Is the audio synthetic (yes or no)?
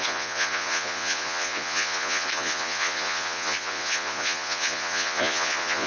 yes